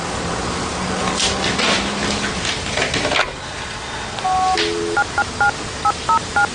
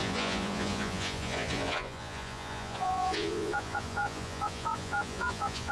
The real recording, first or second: first